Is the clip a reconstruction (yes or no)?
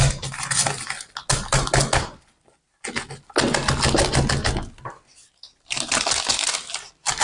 no